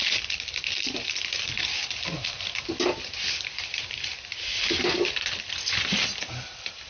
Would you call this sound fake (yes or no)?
yes